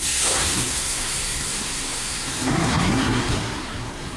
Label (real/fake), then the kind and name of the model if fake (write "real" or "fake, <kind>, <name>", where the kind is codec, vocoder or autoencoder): fake, codec, SNAC